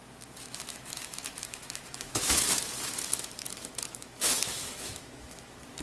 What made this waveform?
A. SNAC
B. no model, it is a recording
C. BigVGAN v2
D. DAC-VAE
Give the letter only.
D